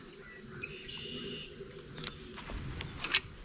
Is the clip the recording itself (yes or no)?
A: yes